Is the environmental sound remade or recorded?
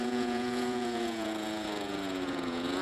remade